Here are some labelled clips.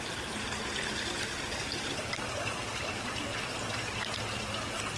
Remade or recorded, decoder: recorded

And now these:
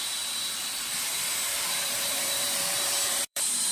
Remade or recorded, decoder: remade, vocoder, BigVGAN v2